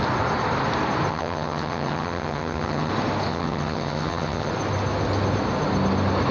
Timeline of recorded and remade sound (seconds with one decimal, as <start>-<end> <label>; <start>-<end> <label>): 0.0-1.1 recorded; 1.1-2.9 remade; 2.9-3.3 recorded; 3.3-4.5 remade; 4.5-6.3 recorded